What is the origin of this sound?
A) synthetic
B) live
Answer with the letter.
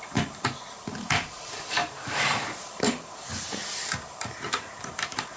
A